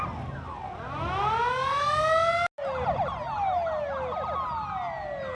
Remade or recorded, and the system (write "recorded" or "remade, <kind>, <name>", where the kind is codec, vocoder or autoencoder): recorded